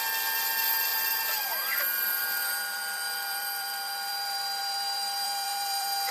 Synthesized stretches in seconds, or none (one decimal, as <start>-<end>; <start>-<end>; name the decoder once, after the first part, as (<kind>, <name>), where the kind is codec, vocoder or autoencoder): 0.0-6.1 (vocoder, BigVGAN v2)